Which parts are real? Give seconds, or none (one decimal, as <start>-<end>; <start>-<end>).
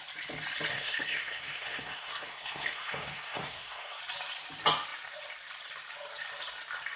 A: 0.0-0.7; 4.0-7.0